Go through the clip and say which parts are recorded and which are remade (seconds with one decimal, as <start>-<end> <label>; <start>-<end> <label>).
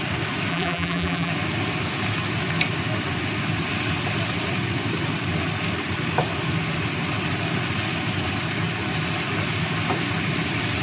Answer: 0.0-0.5 recorded; 0.5-1.3 remade; 1.3-10.8 recorded